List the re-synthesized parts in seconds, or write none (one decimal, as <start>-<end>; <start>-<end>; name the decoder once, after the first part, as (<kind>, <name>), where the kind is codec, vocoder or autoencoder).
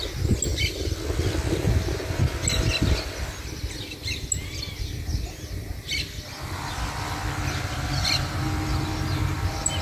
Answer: none